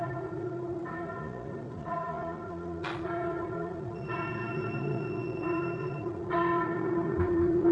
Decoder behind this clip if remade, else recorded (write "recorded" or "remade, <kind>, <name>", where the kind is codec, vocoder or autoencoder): remade, vocoder, Vocos